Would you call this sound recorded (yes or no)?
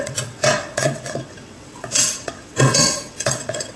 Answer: no